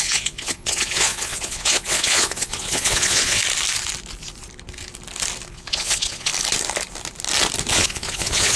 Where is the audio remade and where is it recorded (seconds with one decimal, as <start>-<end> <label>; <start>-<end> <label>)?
0.0-3.4 remade; 3.4-5.5 recorded; 5.5-6.3 remade; 6.3-7.7 recorded; 7.7-8.6 remade